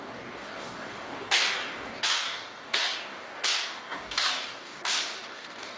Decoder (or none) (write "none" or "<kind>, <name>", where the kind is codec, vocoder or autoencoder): codec, DAC